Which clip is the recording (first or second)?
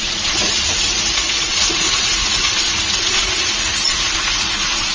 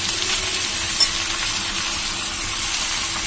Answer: second